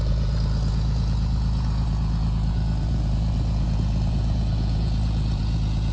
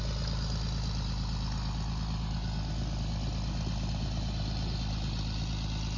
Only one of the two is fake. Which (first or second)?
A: first